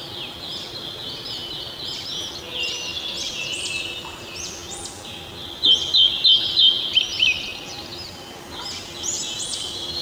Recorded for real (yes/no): yes